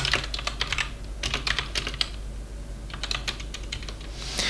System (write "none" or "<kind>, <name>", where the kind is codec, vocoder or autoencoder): none